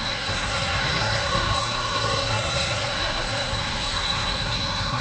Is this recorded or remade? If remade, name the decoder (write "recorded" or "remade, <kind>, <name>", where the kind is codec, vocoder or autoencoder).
remade, codec, SNAC